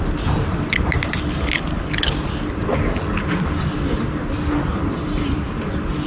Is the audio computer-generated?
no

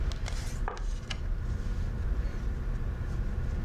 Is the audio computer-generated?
no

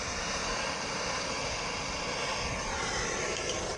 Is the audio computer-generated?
no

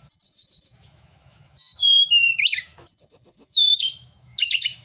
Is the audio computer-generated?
yes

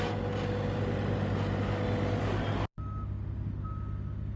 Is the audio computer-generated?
no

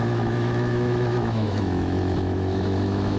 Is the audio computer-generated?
yes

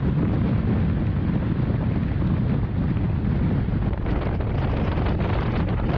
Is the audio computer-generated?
no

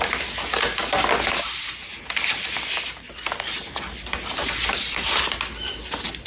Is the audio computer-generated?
no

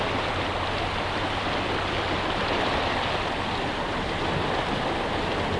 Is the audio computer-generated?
no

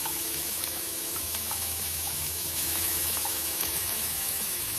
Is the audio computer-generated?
yes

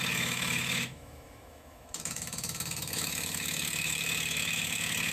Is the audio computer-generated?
yes